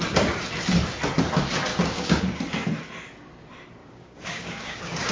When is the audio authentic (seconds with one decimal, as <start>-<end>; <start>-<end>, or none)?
0.0-1.7; 2.2-3.8

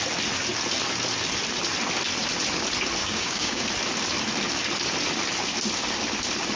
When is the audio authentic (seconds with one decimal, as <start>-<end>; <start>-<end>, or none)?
0.0-3.0; 3.6-6.6

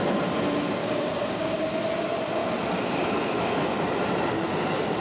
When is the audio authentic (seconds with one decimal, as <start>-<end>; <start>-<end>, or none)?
0.0-0.8; 1.8-5.0

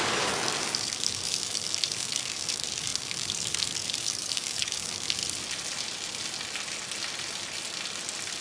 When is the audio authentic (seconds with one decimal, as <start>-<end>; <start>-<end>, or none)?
5.2-8.4

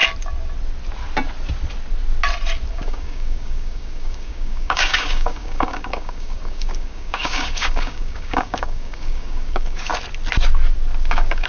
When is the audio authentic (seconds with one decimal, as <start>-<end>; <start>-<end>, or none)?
0.0-2.7; 9.9-11.0

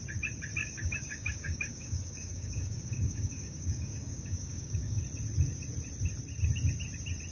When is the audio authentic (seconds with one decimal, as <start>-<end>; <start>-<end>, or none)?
0.0-0.6; 5.0-7.3

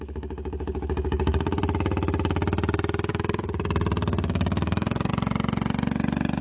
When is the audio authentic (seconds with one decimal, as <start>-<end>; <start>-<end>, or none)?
1.6-3.1; 5.1-6.4

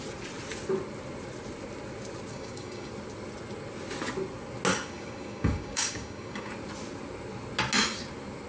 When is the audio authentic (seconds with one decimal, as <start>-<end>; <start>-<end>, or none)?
0.0-2.3; 2.9-4.7; 6.5-8.5